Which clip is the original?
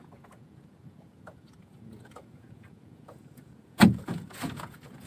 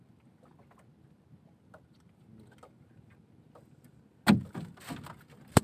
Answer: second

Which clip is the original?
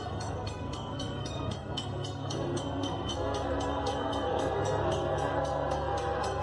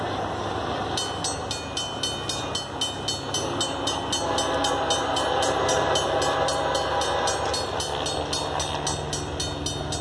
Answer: second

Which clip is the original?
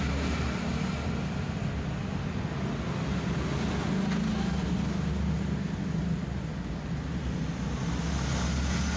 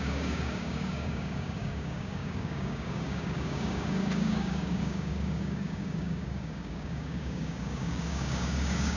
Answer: first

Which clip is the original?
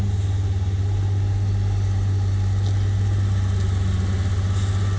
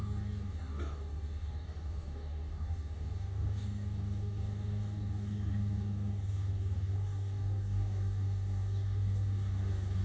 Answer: first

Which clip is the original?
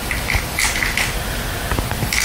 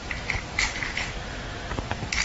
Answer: first